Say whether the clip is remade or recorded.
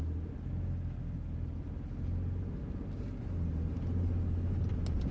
recorded